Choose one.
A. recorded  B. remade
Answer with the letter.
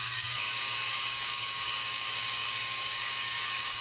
B